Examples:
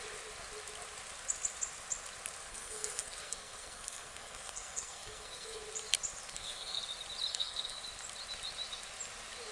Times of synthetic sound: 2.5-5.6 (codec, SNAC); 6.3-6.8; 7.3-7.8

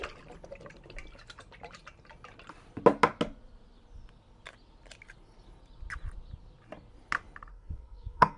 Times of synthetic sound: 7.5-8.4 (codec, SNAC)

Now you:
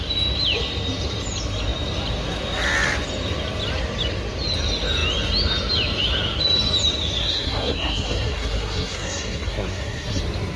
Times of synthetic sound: 7.2-10.2 (codec, SNAC)

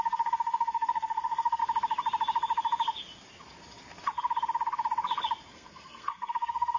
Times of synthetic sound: 0.0-1.6 (codec, SNAC); 5.5-6.8

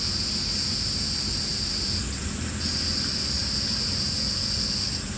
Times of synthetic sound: none

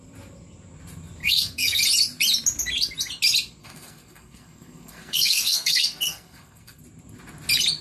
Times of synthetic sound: 1.2-1.8 (codec, SNAC); 3.6-6.8

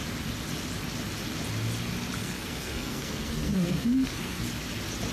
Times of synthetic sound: 2.2-4.5 (codec, SNAC)